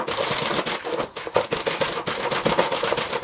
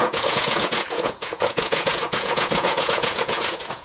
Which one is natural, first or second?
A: first